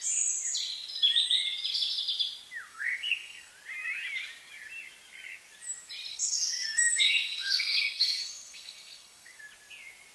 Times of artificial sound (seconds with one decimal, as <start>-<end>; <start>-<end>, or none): 2.7-3.5; 6.1-9.4